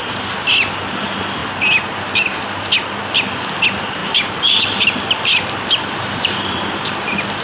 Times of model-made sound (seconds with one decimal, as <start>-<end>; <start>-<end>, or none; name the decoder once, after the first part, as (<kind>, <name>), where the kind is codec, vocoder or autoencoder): 0.0-1.4 (vocoder, BigVGAN v2); 3.0-7.4

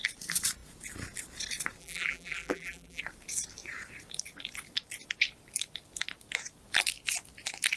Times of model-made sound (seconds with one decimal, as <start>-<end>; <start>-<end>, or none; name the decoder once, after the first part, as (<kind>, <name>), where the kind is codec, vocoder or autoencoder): 1.8-3.0 (vocoder, BigVGAN v2)

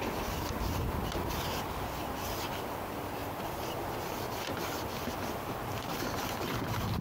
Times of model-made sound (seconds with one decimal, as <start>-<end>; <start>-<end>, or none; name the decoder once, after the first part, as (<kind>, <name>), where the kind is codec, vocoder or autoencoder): 3.2-3.7 (vocoder, BigVGAN v2)